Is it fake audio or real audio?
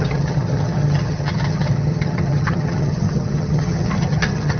fake